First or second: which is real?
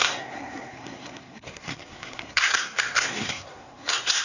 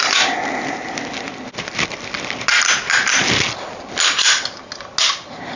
second